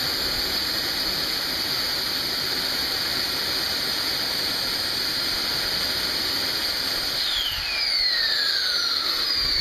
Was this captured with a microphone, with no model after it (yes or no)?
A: yes